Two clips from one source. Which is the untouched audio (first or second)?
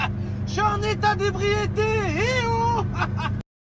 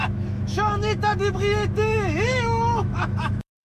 first